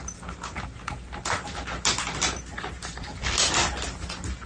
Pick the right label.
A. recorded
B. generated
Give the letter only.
A